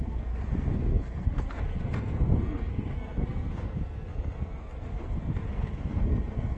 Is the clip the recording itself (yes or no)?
no